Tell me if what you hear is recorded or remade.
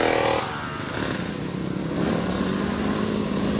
recorded